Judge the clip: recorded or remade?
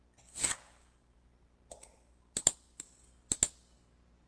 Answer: recorded